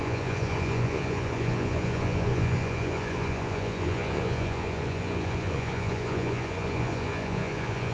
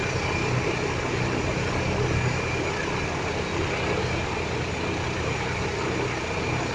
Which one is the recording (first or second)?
second